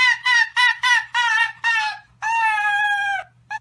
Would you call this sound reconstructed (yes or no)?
no